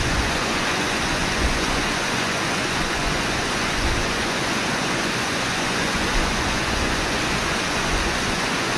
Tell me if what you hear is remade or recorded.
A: remade